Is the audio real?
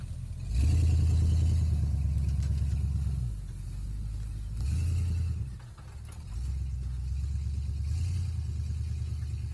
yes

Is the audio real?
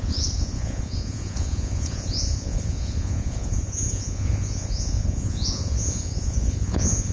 no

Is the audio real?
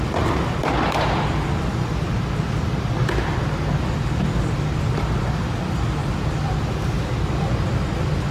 yes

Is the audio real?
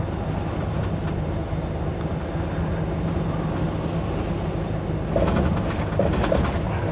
yes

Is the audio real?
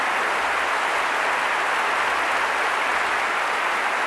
yes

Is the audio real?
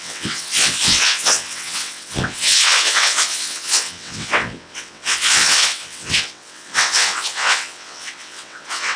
no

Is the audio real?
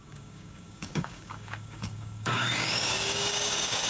no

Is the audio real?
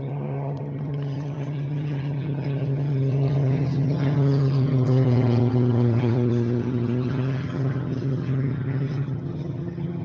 no